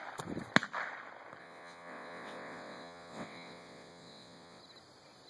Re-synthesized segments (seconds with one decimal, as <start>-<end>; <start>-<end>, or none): 1.4-4.6